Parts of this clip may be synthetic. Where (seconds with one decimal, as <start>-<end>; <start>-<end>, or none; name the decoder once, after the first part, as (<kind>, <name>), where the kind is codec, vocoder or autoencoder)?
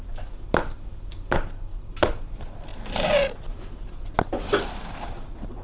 none